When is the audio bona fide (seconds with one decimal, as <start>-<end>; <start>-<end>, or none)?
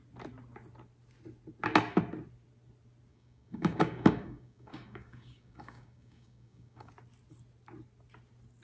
0.0-3.1; 6.9-8.6